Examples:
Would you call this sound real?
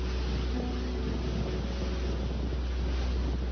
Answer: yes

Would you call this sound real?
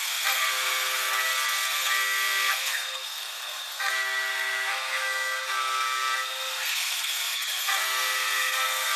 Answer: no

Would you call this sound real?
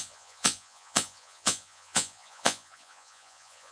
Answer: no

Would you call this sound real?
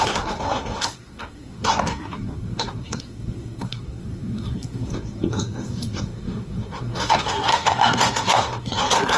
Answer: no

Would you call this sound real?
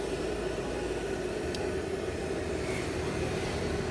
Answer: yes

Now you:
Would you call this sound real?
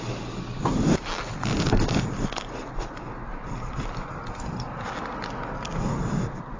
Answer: yes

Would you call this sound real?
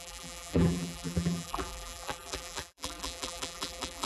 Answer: no